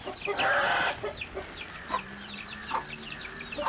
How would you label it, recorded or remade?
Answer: recorded